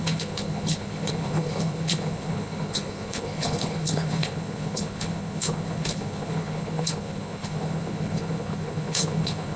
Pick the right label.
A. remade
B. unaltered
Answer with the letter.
A